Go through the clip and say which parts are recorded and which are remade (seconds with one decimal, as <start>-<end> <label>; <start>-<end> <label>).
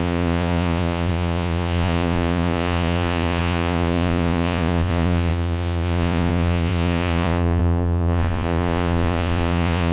0.0-9.9 remade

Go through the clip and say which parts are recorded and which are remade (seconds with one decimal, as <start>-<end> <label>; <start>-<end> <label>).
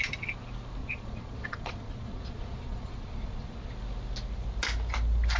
0.0-0.8 recorded; 0.8-3.7 remade; 3.7-5.4 recorded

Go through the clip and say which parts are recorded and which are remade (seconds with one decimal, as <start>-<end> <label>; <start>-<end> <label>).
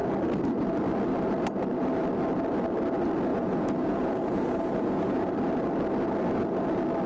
0.0-3.3 recorded; 3.3-5.3 remade; 5.3-7.1 recorded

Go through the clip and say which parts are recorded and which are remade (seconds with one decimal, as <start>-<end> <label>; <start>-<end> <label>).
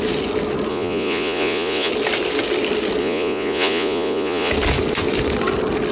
0.0-0.7 recorded; 0.7-1.9 remade; 1.9-3.0 recorded; 3.0-4.5 remade; 4.5-5.9 recorded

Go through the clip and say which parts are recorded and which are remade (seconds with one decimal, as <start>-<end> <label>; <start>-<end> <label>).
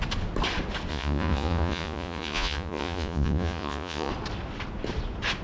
0.0-0.9 recorded; 0.9-4.1 remade; 4.1-5.4 recorded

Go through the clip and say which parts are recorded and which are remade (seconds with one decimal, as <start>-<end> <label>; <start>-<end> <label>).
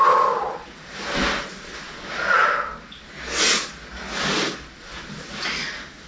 0.0-6.1 recorded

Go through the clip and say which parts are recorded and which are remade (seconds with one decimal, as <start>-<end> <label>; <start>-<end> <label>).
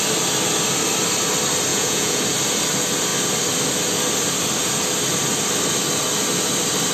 0.0-1.7 recorded; 1.7-2.2 remade; 2.2-6.9 recorded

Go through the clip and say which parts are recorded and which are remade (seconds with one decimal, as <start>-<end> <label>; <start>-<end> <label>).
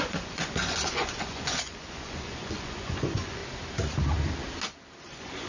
0.0-3.4 remade; 3.4-5.0 recorded; 5.0-5.5 remade